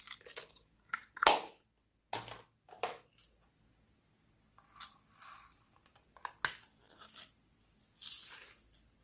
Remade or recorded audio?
recorded